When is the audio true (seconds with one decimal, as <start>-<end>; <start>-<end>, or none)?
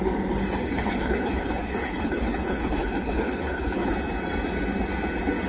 0.0-0.6; 3.9-5.5